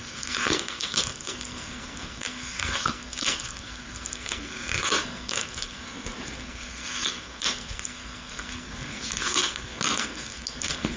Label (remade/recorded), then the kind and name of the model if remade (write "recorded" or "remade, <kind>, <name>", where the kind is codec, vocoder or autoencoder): remade, codec, SNAC